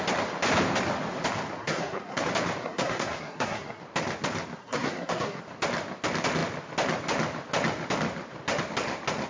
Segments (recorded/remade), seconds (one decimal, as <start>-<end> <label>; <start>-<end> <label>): 0.0-1.6 recorded; 1.6-2.2 remade; 2.2-2.6 recorded; 2.6-3.8 remade; 3.8-4.6 recorded; 4.6-5.4 remade; 5.4-9.3 recorded